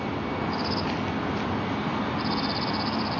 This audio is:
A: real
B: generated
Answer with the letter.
A